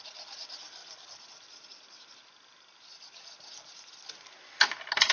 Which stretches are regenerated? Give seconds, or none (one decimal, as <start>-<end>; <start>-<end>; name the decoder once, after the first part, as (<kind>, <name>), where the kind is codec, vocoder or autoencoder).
none